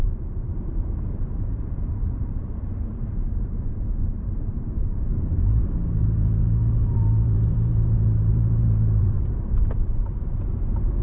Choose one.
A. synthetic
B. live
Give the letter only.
A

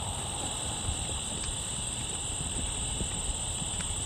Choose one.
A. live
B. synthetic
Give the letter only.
A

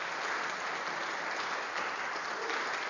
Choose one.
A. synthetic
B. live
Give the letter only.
B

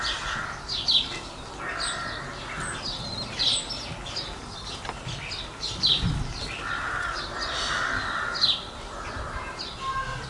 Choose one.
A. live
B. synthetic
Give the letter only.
A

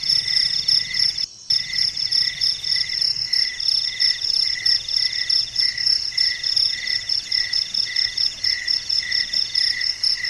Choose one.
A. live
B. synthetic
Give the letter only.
A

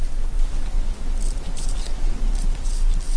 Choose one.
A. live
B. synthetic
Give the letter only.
A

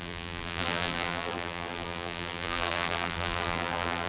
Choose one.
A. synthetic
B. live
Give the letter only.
A